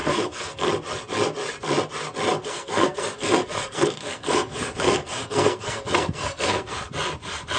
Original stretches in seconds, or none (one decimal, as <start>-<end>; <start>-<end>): 0.7-2.4; 6.9-7.6